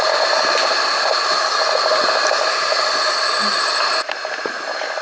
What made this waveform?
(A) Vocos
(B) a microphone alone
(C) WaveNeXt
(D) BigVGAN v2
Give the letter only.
B